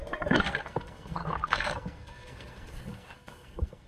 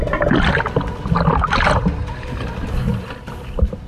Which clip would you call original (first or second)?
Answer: second